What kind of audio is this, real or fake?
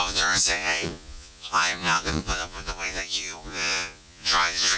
fake